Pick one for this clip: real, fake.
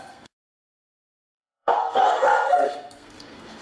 fake